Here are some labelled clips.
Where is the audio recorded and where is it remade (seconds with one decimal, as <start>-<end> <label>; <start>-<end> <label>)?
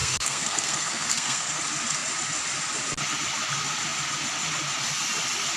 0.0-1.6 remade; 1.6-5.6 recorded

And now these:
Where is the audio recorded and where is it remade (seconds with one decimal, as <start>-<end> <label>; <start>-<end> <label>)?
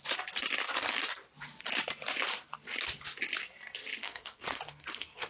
0.0-4.0 recorded; 4.0-5.3 remade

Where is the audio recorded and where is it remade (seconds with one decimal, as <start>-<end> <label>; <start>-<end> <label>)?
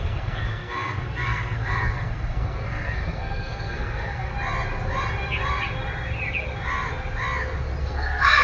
0.0-4.3 remade; 4.3-7.8 recorded; 7.8-8.4 remade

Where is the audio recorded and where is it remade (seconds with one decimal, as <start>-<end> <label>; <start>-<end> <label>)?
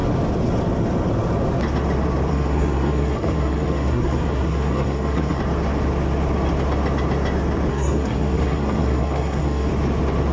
0.0-2.3 recorded; 2.3-5.4 remade; 5.4-7.7 recorded; 7.7-9.7 remade; 9.7-10.3 recorded